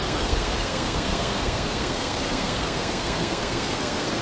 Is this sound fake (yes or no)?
yes